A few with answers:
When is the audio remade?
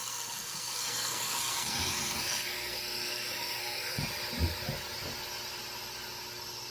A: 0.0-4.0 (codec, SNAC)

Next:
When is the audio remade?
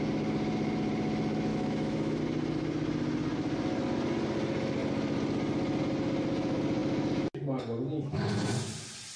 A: 1.5-2.2 (autoencoder, DAC-VAE)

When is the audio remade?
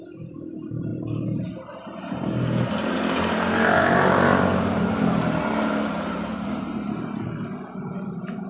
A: 0.0-8.5 (vocoder, BigVGAN v2)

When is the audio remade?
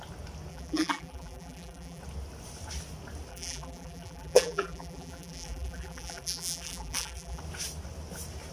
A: 0.5-2.0 (vocoder, BigVGAN v2); 3.3-7.4